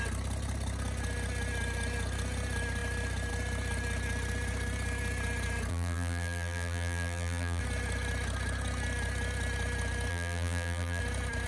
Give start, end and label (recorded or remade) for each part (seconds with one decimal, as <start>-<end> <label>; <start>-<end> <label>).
0.0-5.7 recorded; 5.7-7.6 remade; 7.6-10.1 recorded; 10.1-11.0 remade; 11.0-11.5 recorded